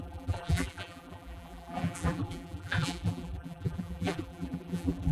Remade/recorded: remade